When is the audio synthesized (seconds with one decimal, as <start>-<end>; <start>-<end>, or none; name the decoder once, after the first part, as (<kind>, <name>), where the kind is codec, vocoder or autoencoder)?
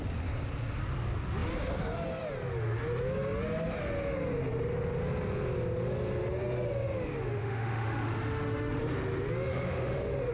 7.4-8.8 (autoencoder, DAC-VAE); 9.5-10.3